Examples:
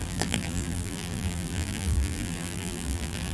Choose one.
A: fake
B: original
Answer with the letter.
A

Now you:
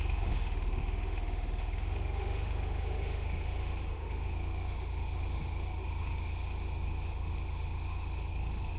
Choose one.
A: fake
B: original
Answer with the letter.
A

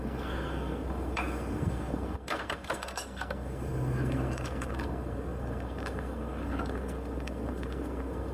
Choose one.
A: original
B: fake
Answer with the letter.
B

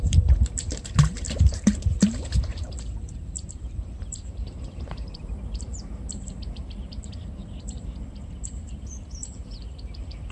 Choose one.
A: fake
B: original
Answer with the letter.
A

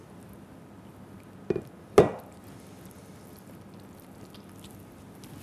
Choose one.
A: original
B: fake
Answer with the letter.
A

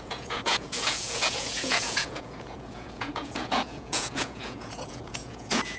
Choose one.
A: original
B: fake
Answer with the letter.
B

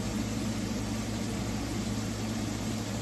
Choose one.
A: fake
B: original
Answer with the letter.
B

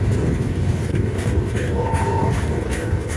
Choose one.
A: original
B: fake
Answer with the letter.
B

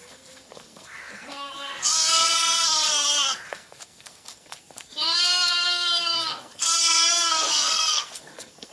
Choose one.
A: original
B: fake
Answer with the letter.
B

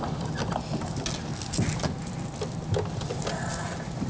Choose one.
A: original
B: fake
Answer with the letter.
A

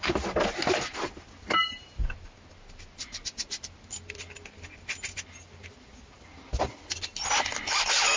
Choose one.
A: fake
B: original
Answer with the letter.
B